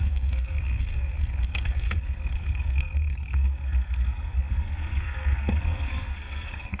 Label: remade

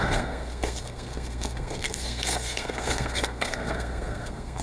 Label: remade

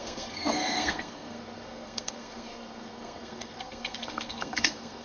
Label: remade